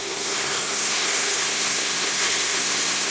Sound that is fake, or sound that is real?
fake